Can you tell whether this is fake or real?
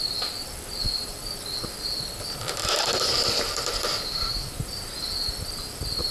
fake